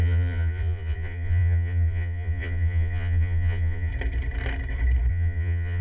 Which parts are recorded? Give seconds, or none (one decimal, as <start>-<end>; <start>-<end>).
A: 3.9-5.1